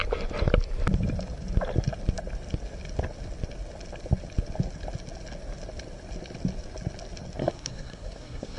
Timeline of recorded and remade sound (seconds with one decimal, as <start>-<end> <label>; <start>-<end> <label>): 0.0-7.4 recorded; 7.4-8.6 remade